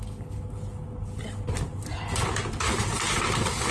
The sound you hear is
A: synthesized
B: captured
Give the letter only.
B